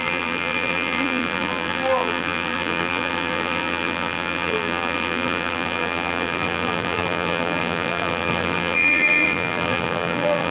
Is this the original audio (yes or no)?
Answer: no